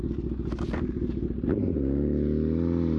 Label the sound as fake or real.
real